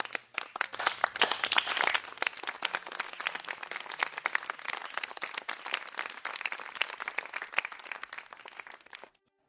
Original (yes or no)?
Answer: yes